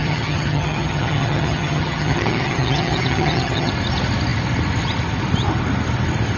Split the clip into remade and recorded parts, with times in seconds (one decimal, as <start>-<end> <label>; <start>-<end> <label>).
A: 0.0-3.7 remade; 3.7-6.4 recorded